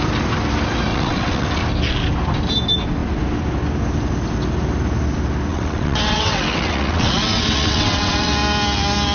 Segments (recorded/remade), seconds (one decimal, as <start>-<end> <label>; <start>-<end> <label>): 0.0-0.9 recorded; 0.9-1.6 remade; 1.6-5.5 recorded; 5.5-8.3 remade; 8.3-9.1 recorded